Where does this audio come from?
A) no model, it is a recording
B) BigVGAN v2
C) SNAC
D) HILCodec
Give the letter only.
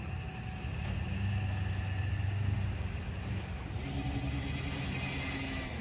A